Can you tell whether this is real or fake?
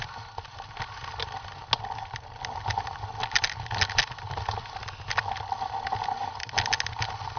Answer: real